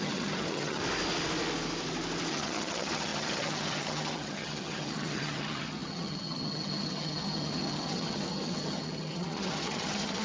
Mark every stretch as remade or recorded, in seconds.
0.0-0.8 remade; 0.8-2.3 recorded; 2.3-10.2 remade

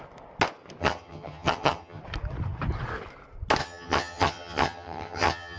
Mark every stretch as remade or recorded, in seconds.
0.0-0.8 recorded; 0.8-2.0 remade; 2.0-3.6 recorded; 3.6-5.6 remade

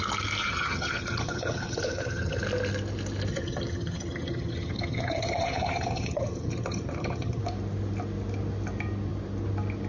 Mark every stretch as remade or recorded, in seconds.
0.0-0.4 recorded; 0.4-2.4 remade; 2.4-3.3 recorded; 3.3-7.4 remade; 7.4-9.9 recorded

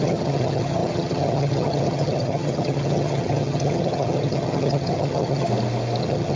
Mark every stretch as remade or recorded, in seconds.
0.0-5.5 remade; 5.5-6.0 recorded; 6.0-6.4 remade

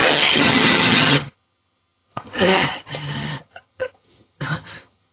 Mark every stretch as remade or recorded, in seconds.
0.0-5.1 remade

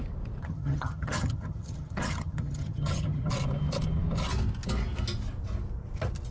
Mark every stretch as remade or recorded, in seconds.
0.0-0.4 recorded; 0.4-3.3 remade; 3.3-6.3 recorded

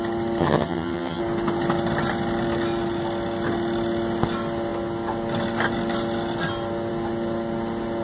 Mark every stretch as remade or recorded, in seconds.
0.0-0.4 recorded; 0.4-1.2 remade; 1.2-8.0 recorded

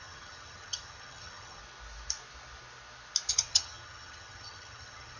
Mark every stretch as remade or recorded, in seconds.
0.0-1.6 remade; 1.6-3.3 recorded; 3.3-5.2 remade